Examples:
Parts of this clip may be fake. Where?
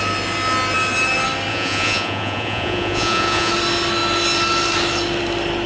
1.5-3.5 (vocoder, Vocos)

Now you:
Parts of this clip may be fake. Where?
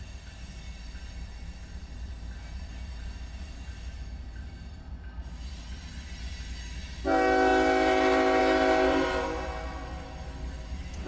none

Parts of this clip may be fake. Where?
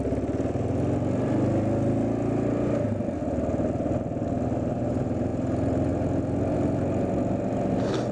none